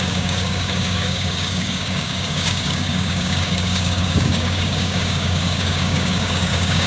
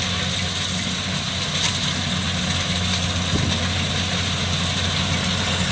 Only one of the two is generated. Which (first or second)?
first